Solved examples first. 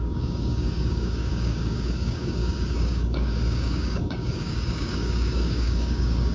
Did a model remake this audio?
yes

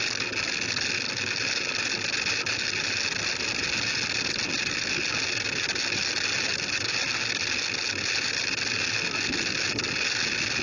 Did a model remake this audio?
no